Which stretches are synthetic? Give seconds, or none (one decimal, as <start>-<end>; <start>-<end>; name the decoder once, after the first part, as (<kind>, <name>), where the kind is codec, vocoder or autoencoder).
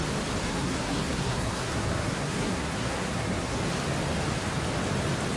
0.4-3.6 (codec, SNAC)